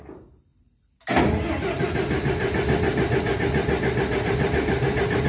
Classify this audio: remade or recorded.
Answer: recorded